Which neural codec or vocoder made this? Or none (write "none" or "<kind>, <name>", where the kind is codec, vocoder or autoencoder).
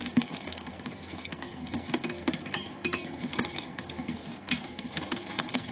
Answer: codec, SNAC